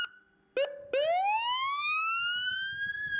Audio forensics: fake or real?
real